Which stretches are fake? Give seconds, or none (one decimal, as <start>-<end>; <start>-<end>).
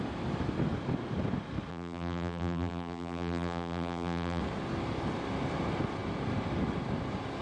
1.7-4.4